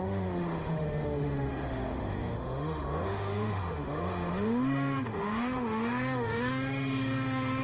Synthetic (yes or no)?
yes